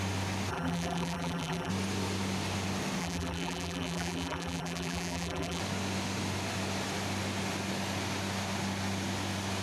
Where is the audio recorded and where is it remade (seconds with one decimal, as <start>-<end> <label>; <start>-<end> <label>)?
0.0-0.5 recorded; 0.5-1.7 remade; 1.7-3.0 recorded; 3.0-5.6 remade; 5.6-9.6 recorded